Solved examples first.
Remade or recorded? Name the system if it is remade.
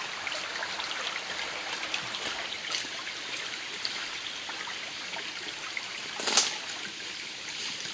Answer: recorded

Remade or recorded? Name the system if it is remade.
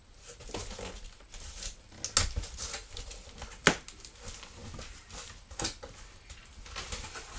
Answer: recorded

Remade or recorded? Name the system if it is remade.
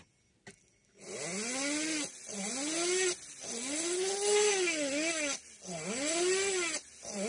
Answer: recorded